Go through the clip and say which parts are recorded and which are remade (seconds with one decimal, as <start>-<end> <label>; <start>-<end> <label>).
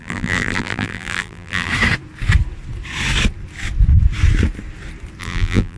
0.0-1.7 remade; 1.7-5.2 recorded; 5.2-5.8 remade